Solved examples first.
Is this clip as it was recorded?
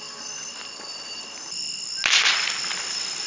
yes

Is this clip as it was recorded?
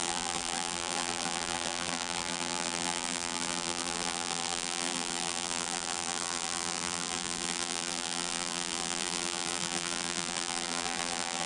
no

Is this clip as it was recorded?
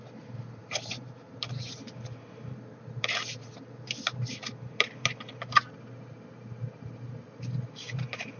no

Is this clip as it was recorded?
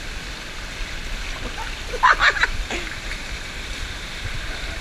no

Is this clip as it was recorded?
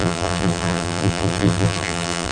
no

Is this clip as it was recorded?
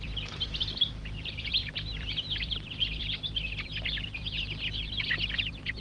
no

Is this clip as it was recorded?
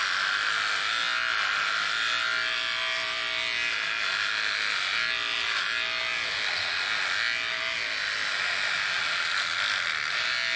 yes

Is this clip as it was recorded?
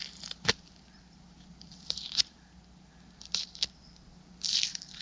no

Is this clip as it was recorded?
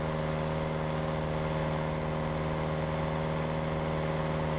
yes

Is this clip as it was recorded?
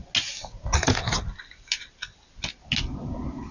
yes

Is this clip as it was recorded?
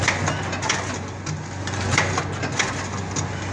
yes